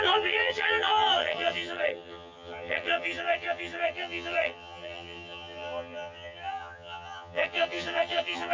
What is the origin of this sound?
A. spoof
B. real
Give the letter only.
A